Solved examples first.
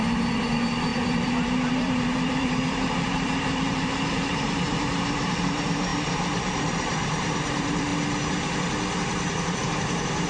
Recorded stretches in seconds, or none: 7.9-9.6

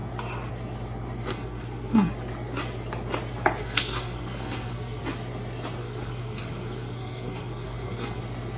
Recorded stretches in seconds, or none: 0.0-1.3; 2.1-3.6; 5.0-5.8; 8.2-8.6